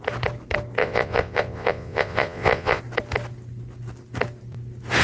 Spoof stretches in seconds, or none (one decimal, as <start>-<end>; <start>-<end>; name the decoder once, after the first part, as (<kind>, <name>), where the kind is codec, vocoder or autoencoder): 0.8-2.8 (vocoder, Vocos)